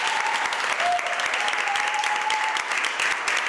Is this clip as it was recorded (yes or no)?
yes